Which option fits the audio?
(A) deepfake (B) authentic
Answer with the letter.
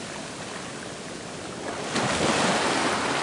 B